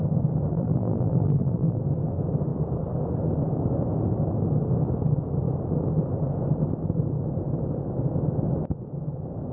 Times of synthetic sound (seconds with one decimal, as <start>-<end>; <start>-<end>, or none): 0.5-1.8